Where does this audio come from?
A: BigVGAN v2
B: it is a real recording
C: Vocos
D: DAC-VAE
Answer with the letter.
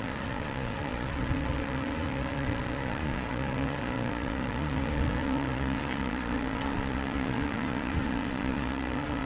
C